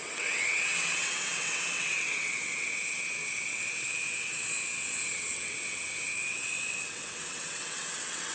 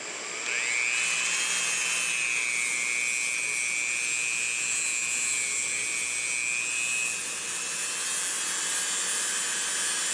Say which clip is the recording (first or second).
second